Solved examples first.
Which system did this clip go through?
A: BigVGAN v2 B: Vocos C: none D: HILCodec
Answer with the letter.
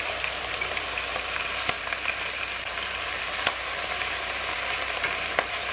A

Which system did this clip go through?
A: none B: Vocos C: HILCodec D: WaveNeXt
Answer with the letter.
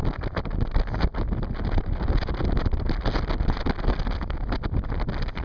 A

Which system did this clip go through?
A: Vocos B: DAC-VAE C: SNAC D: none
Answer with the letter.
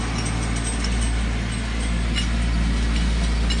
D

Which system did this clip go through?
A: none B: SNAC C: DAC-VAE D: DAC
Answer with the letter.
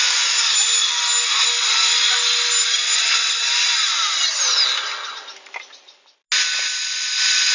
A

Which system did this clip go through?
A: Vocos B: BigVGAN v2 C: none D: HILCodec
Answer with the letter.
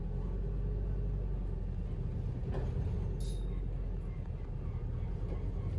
C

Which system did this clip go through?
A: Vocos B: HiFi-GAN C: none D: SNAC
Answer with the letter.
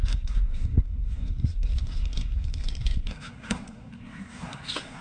D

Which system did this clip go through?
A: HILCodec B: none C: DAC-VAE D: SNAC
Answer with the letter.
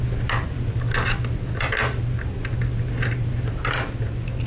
B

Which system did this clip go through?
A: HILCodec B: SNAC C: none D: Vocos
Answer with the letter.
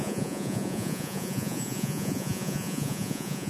D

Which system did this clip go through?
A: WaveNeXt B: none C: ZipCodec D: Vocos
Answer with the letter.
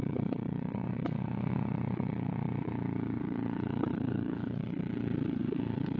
A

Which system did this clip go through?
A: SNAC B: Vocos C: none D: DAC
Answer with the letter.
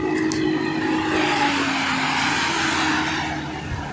C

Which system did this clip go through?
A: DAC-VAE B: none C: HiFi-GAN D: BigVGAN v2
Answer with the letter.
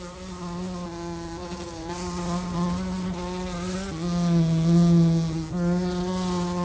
B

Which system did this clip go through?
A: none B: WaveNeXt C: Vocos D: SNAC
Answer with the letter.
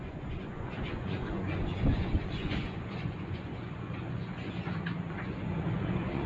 C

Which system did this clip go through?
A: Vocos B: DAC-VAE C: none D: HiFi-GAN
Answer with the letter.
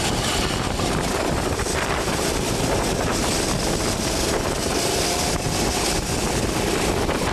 C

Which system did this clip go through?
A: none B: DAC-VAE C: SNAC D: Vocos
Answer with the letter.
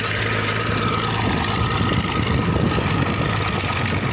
A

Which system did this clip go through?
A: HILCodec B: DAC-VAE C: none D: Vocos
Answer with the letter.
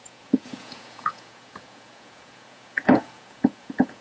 D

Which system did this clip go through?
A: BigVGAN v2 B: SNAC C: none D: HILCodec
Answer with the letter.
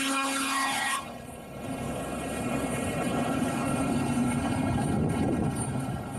D